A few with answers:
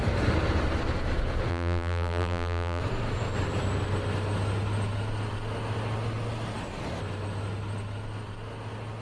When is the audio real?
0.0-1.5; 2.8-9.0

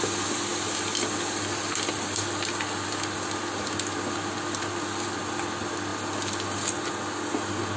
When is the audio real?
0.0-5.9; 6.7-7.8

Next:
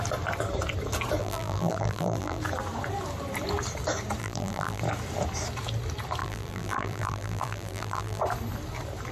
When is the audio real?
0.0-1.2; 2.4-4.2; 4.8-6.2; 8.2-9.1